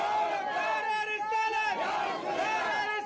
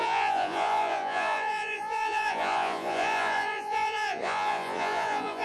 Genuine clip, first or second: first